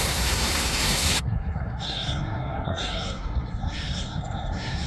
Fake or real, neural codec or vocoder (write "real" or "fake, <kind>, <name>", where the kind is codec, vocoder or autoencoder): fake, codec, SNAC